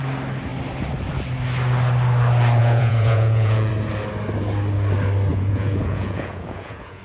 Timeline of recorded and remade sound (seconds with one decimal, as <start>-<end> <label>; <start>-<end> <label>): 0.0-2.6 recorded; 2.6-3.7 remade; 3.7-5.3 recorded; 5.3-7.0 remade